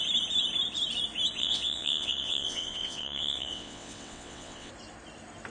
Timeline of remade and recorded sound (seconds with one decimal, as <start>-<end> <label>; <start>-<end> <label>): 0.0-1.4 recorded; 1.4-4.7 remade; 4.7-5.5 recorded